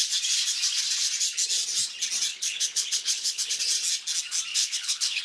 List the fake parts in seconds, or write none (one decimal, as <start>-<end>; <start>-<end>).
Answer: 2.3-3.6; 4.5-5.2